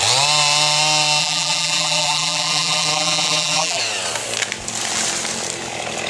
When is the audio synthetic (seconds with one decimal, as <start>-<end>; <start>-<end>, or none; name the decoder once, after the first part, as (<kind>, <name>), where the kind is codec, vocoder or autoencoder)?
1.2-3.8 (vocoder, BigVGAN v2)